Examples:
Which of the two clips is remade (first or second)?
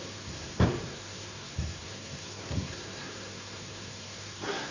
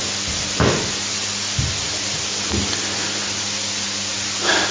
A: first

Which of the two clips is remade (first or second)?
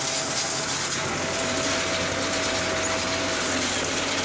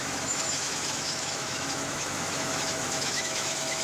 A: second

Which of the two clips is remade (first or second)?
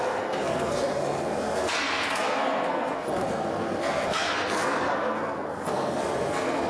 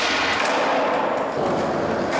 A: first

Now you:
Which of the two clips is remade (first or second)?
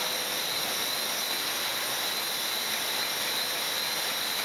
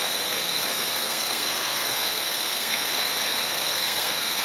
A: second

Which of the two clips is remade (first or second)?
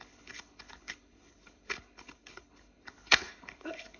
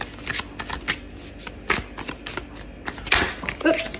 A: first